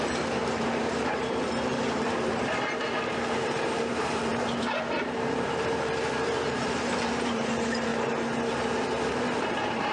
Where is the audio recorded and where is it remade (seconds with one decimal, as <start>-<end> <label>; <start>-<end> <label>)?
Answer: 0.0-7.9 remade; 7.9-9.1 recorded; 9.1-9.9 remade